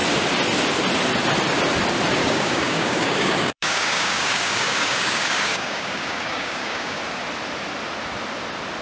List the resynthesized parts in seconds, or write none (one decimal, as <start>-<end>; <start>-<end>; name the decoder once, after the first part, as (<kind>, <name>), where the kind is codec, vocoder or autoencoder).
2.2-7.0 (codec, DAC)